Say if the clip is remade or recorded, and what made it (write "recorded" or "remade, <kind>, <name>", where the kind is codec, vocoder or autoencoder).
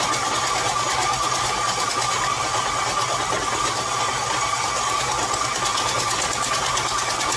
recorded